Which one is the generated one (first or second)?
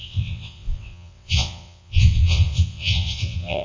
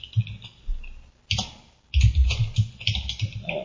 first